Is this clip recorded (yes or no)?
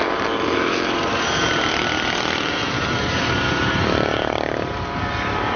no